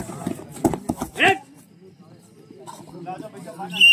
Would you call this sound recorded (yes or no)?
yes